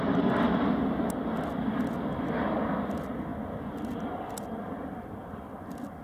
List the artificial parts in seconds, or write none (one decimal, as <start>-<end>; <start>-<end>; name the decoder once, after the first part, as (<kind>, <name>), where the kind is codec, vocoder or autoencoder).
none